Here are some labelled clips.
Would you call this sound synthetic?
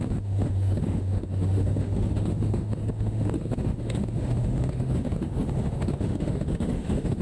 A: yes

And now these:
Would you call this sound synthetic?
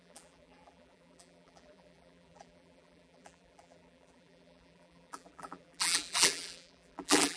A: yes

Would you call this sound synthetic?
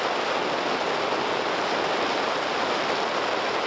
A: no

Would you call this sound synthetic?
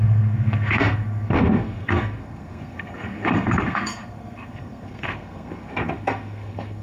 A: yes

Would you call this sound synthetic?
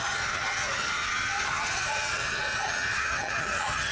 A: yes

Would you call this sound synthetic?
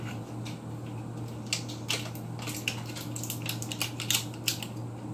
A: no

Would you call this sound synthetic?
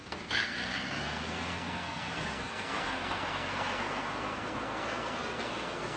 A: yes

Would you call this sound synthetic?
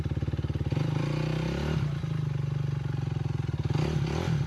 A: no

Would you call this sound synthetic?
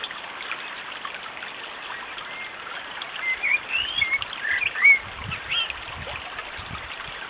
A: no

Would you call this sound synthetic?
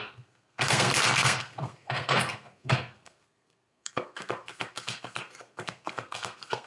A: yes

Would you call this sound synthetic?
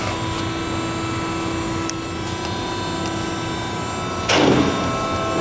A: no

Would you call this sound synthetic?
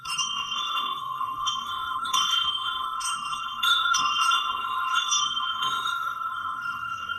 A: yes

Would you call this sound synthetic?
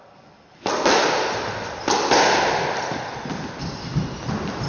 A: no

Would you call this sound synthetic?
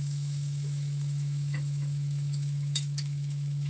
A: yes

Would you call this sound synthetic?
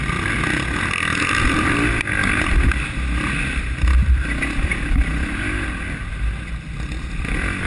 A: no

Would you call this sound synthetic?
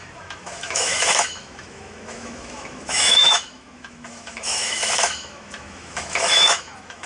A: yes